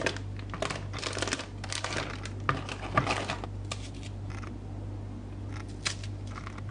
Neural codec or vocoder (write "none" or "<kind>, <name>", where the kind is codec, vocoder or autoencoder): none